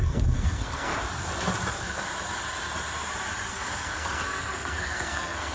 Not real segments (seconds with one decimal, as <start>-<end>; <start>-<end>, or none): 0.0-0.9; 1.7-2.1; 3.5-5.5